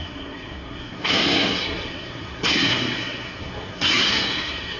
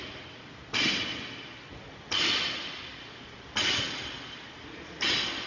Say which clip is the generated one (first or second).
first